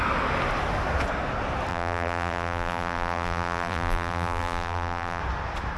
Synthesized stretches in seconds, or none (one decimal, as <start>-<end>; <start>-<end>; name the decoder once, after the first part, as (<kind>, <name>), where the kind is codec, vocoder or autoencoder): 1.7-5.2 (vocoder, BigVGAN v2)